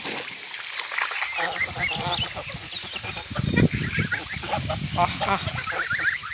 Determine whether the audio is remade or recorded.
recorded